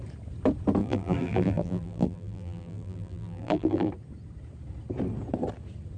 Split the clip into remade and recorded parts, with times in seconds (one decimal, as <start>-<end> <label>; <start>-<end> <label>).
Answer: 0.0-0.8 recorded; 0.8-3.9 remade; 3.9-6.0 recorded

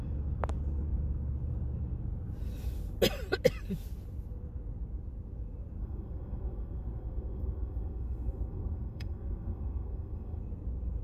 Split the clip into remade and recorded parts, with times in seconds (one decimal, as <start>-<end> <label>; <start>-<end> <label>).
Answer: 0.0-5.8 recorded; 5.8-10.4 remade; 10.4-11.0 recorded

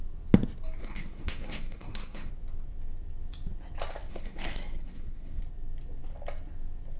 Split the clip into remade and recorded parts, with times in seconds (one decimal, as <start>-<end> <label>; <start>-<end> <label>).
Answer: 0.0-0.8 recorded; 0.8-2.3 remade; 2.3-4.1 recorded; 4.1-5.4 remade; 5.4-7.0 recorded

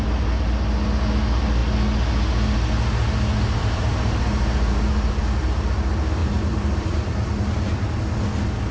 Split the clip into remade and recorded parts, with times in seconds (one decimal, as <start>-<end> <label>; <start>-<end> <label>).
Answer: 0.0-3.6 recorded; 3.6-5.2 remade; 5.2-6.2 recorded; 6.2-8.0 remade; 8.0-8.7 recorded

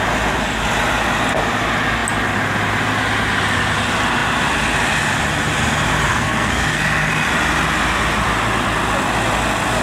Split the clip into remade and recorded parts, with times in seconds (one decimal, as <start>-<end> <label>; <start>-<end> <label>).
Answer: 0.0-6.1 recorded; 6.1-7.1 remade; 7.1-9.8 recorded

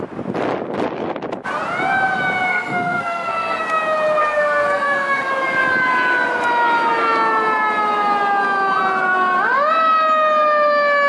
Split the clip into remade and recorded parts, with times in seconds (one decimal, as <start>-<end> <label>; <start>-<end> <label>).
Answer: 0.0-2.5 recorded; 2.5-3.6 remade; 3.6-4.2 recorded; 4.2-5.3 remade; 5.3-11.1 recorded

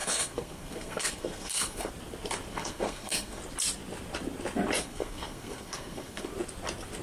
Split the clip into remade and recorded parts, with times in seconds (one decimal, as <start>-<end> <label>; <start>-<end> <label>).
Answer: 0.0-1.9 remade; 1.9-2.5 recorded; 2.5-3.4 remade; 3.4-4.8 recorded; 4.8-6.3 remade; 6.3-7.0 recorded